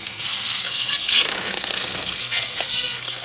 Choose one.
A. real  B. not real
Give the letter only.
B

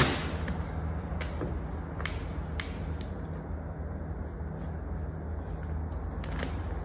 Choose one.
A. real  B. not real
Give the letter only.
A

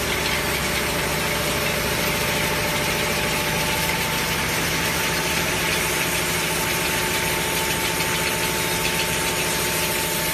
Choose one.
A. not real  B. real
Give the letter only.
B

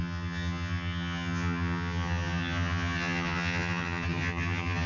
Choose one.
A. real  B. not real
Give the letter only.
B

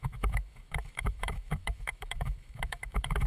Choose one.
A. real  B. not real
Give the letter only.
B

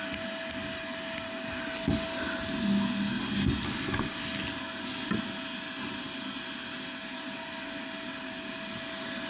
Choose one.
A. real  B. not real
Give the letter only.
A